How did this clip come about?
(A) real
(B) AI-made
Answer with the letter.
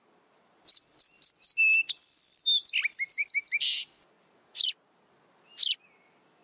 A